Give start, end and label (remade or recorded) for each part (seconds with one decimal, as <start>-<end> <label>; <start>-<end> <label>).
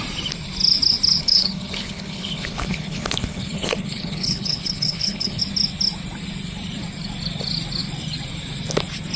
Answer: 0.0-1.2 recorded; 1.2-5.4 remade; 5.4-9.2 recorded